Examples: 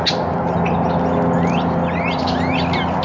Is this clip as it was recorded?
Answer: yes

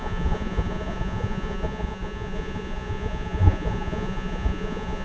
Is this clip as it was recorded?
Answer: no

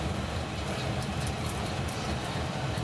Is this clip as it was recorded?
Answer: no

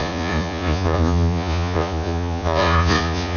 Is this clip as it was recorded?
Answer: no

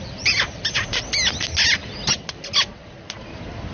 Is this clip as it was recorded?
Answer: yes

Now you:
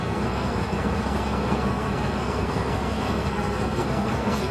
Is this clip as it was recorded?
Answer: no